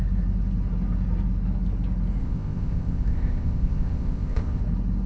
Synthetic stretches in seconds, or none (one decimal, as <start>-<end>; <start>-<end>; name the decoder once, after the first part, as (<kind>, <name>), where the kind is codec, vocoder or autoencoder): 2.2-4.6 (codec, ZipCodec)